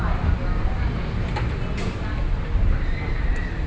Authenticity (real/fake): real